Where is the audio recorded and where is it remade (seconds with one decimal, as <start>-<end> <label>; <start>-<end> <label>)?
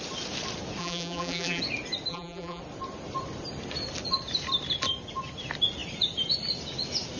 0.0-0.8 recorded; 0.8-1.6 remade; 1.6-2.1 recorded; 2.1-2.6 remade; 2.6-7.2 recorded